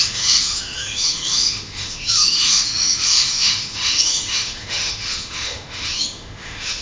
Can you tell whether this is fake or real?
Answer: fake